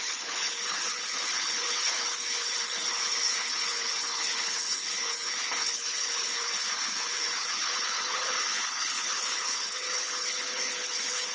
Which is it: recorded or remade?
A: remade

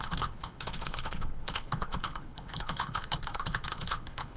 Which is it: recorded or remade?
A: remade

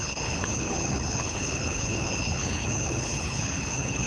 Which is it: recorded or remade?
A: remade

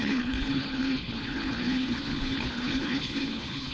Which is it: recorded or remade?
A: remade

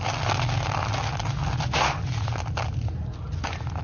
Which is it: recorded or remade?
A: recorded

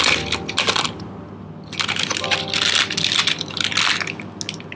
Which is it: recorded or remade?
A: recorded